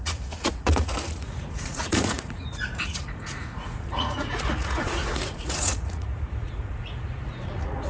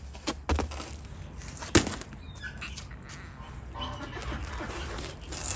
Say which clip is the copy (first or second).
first